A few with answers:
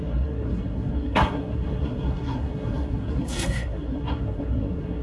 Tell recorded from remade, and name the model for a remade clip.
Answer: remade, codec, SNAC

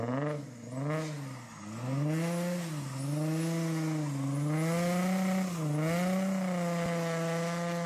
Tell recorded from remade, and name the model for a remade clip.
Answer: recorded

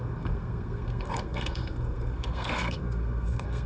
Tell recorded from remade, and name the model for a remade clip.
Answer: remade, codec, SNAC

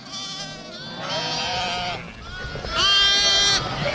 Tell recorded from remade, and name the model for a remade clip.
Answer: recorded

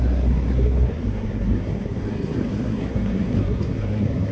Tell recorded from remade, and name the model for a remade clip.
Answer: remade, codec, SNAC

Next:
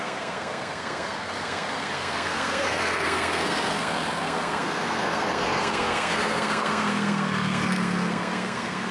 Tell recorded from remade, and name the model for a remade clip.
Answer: remade, codec, SNAC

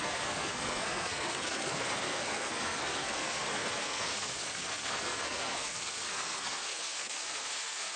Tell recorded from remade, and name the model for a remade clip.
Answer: remade, codec, SNAC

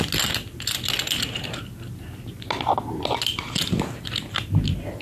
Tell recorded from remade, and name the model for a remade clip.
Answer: recorded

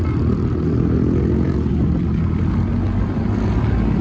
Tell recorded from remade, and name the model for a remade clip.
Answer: recorded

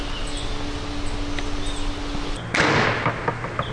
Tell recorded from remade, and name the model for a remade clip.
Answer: recorded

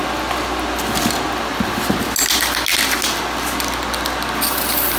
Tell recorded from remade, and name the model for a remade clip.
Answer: recorded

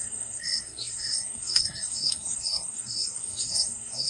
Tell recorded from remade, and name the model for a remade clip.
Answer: remade, codec, SNAC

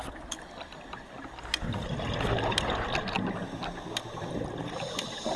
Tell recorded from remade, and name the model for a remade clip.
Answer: recorded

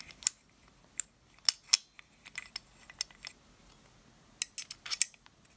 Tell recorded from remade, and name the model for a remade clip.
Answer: recorded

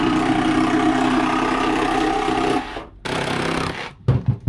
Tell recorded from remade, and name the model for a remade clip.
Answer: recorded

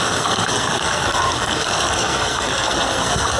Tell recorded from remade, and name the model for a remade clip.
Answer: remade, codec, SNAC